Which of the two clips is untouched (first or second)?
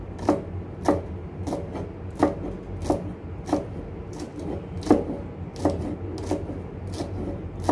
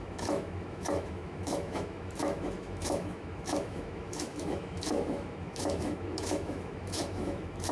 first